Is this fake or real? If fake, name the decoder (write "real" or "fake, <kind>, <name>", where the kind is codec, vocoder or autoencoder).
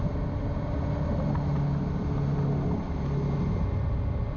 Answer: real